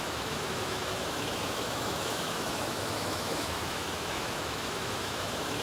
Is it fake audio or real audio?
fake